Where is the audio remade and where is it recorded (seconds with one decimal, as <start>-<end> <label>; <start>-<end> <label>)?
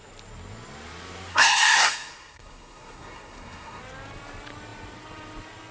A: 0.0-1.3 recorded; 1.3-3.8 remade; 3.8-5.7 recorded